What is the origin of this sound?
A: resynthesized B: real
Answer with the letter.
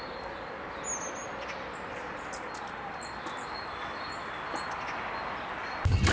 B